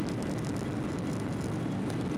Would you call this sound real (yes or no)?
yes